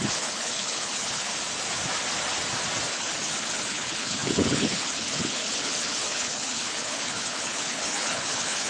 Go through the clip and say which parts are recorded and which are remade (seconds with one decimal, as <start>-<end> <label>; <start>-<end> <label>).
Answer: 0.0-1.3 remade; 1.3-2.9 recorded; 2.9-8.7 remade